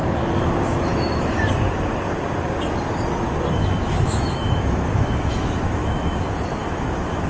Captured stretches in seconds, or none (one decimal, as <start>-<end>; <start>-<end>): 0.0-3.5